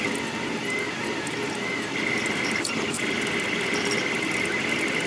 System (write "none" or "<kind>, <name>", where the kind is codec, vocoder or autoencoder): none